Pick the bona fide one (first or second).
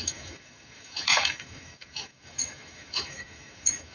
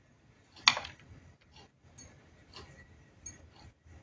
second